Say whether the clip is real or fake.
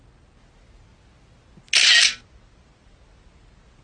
real